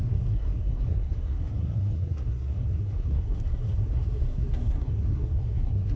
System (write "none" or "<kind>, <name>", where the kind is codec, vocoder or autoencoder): codec, SNAC